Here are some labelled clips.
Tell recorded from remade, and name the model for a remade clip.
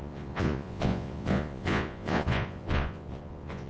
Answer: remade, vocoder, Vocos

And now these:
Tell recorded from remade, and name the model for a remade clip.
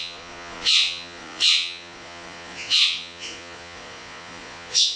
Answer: remade, vocoder, Vocos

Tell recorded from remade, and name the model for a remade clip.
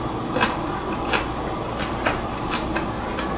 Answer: recorded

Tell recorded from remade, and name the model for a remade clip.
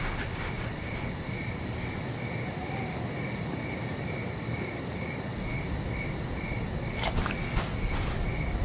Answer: recorded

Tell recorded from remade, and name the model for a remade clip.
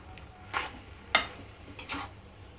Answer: recorded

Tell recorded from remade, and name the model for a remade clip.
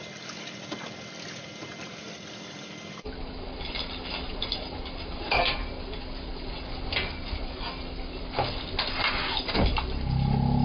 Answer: recorded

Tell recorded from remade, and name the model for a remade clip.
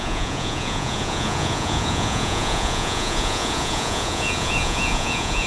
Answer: remade, vocoder, Vocos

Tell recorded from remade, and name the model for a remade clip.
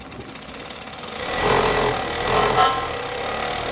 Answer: recorded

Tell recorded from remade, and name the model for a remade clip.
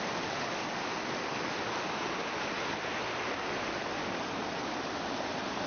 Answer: recorded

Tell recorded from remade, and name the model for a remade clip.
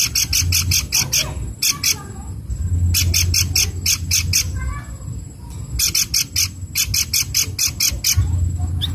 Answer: recorded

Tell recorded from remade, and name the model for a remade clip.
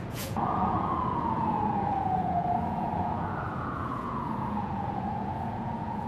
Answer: remade, vocoder, Vocos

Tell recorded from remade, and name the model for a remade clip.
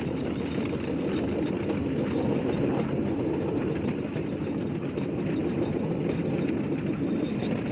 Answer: recorded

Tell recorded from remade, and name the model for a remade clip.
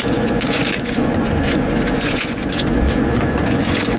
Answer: remade, vocoder, Vocos